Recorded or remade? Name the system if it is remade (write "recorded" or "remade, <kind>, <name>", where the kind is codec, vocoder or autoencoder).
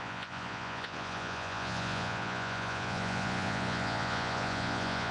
remade, vocoder, Vocos